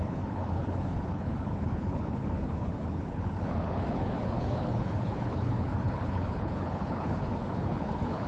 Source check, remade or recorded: remade